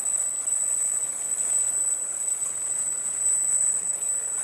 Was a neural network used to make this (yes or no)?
no